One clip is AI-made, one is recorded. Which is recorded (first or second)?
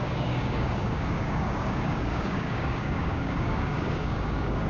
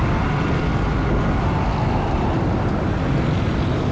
second